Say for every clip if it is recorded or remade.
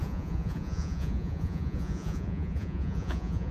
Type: remade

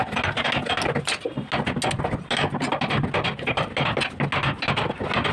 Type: recorded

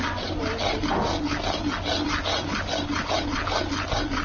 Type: recorded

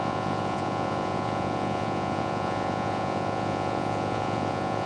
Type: remade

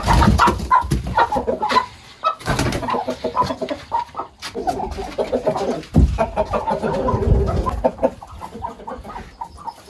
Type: recorded